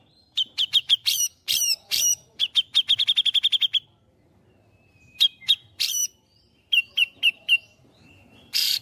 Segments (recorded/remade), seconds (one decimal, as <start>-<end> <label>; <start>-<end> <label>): 0.0-2.4 remade; 2.4-4.1 recorded; 4.1-8.8 remade